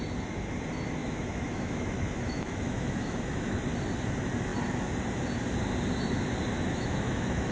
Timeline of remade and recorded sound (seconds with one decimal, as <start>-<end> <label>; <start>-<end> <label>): 0.0-1.0 recorded; 1.0-3.6 remade; 3.6-6.5 recorded; 6.5-7.5 remade